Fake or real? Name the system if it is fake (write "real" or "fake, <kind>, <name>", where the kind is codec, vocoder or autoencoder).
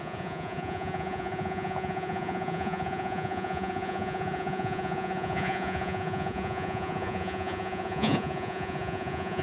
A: fake, vocoder, Vocos